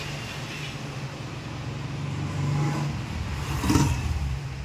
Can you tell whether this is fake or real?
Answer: real